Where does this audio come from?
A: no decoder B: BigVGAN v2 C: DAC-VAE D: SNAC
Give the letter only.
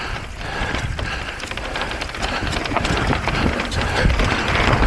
B